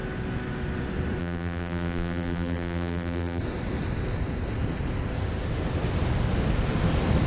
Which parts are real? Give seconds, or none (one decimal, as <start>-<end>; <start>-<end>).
0.0-1.2; 3.4-7.3